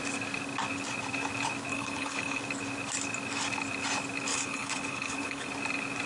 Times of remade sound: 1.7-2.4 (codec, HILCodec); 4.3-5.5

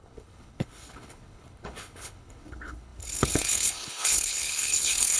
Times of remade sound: 0.0-5.2 (codec, HILCodec)